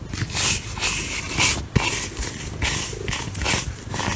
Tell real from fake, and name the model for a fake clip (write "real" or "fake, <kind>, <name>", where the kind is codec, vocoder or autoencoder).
real